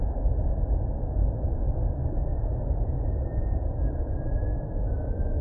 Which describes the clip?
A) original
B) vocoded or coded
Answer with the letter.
A